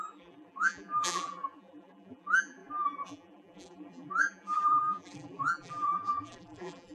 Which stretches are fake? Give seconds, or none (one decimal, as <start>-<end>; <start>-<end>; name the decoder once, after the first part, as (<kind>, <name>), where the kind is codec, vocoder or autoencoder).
0.0-6.9 (vocoder, BigVGAN v2)